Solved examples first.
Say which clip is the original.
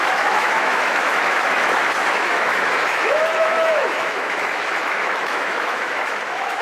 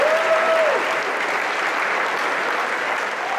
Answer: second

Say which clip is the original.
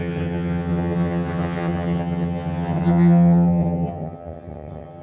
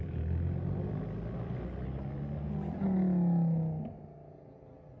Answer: second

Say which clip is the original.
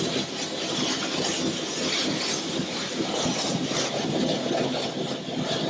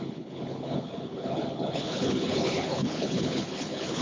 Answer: first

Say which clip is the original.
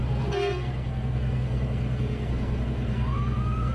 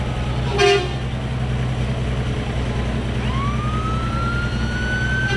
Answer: second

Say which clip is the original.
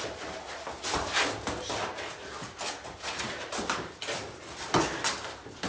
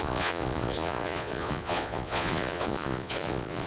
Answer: first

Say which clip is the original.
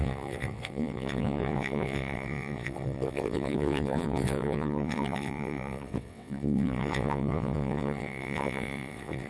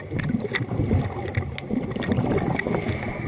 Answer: second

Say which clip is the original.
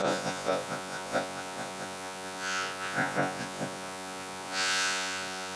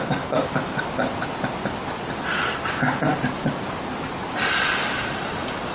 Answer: second